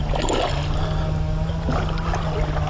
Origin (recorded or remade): recorded